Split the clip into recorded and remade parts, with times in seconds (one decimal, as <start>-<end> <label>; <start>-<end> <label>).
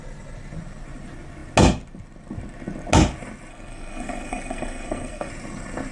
0.0-3.5 recorded; 3.5-5.3 remade; 5.3-5.9 recorded